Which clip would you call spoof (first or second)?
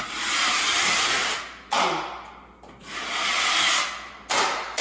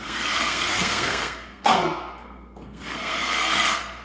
second